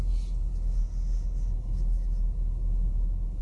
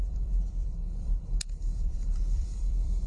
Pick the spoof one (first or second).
second